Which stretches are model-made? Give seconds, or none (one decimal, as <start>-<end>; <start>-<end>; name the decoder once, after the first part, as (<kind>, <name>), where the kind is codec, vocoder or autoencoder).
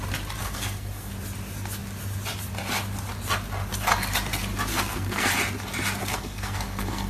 0.4-1.1 (codec, SNAC); 4.7-5.3; 6.0-7.1